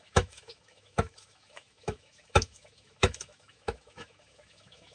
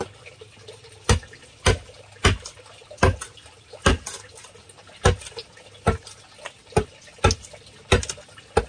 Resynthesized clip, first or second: first